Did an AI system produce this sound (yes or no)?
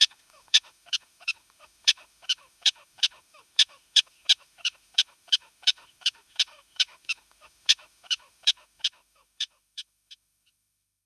yes